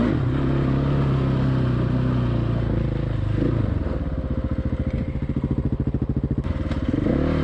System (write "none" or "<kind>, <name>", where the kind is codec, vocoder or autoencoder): none